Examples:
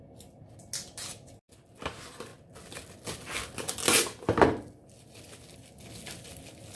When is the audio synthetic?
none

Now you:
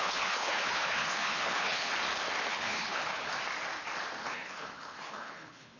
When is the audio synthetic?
0.0-1.9; 2.5-3.3; 4.2-5.8

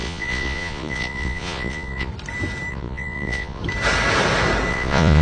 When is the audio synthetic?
0.0-2.1; 2.7-3.6; 4.7-5.2

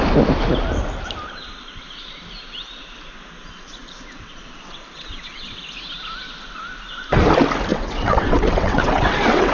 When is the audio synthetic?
3.8-5.6; 7.7-9.5